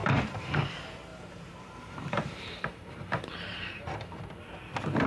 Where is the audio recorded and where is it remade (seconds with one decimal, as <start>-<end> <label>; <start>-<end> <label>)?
0.0-0.6 remade; 0.6-1.1 recorded; 1.1-4.2 remade; 4.2-5.1 recorded